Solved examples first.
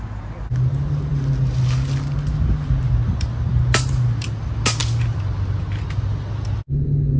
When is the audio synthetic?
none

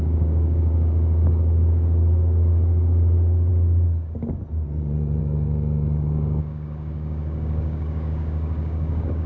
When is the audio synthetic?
0.0-3.5 (codec, DAC); 5.2-9.3

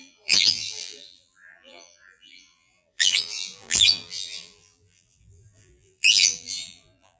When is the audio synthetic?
0.0-7.2 (vocoder, BigVGAN v2)

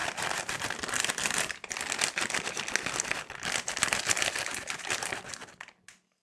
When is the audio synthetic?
none

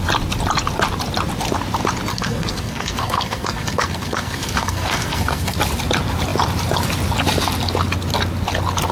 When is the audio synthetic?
2.1-5.6 (codec, SNAC)

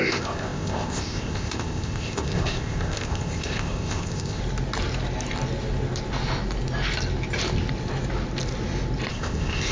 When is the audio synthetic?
0.0-4.4 (codec, ZipCodec); 9.1-9.7

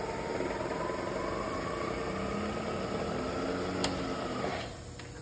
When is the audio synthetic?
none

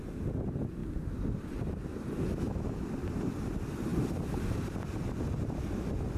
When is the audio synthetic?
none